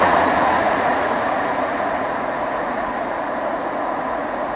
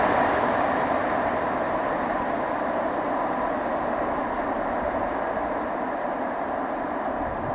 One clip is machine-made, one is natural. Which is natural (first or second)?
second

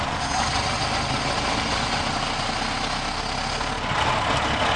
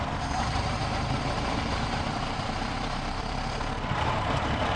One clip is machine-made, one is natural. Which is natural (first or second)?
first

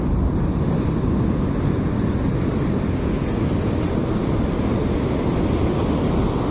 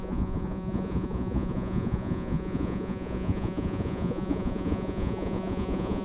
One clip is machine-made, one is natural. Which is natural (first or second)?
first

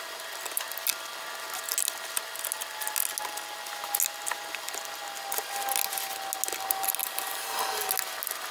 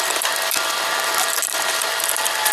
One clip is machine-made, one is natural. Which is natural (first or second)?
first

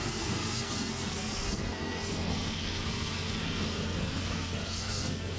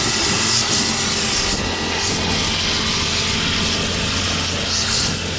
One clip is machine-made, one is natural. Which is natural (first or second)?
second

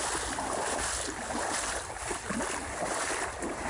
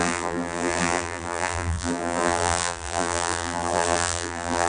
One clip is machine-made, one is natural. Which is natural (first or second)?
first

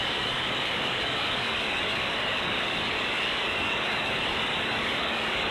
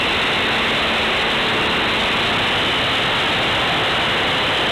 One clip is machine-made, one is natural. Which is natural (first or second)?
second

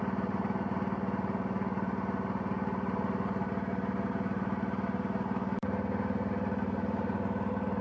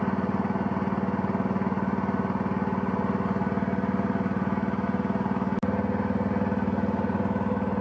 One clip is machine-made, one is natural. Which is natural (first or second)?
second